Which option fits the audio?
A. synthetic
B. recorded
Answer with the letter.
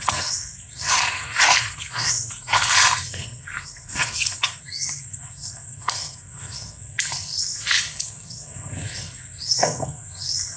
A